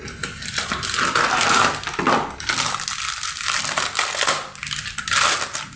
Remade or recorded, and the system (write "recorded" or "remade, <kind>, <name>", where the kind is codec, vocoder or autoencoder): recorded